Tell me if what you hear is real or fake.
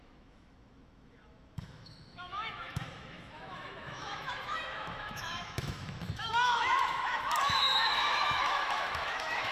fake